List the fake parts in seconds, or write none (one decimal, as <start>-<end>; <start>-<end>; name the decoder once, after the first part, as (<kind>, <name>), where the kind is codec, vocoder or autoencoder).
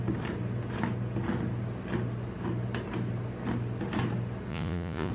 4.5-5.1 (vocoder, Vocos)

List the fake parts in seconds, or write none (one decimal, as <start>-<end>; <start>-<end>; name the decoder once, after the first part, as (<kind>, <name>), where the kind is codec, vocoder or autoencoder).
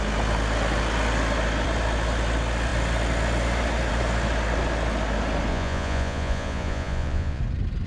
5.5-7.4 (vocoder, Vocos)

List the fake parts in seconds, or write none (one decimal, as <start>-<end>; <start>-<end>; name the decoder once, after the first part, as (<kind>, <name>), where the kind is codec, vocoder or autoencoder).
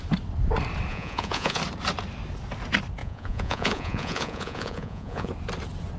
0.9-1.6 (vocoder, Vocos); 3.0-5.3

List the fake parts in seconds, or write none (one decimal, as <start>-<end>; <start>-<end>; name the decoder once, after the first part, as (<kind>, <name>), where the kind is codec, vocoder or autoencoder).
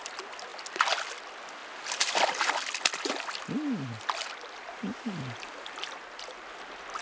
none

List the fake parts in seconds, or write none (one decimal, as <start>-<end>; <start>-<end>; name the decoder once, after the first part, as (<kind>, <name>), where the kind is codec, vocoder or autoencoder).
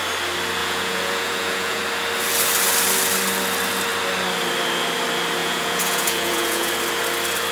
0.6-1.8 (vocoder, Vocos); 5.4-6.7